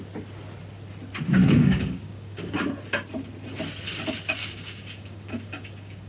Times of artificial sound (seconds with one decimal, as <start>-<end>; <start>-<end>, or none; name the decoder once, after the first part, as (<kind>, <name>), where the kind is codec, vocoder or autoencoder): 1.4-2.6 (codec, DAC); 4.4-6.1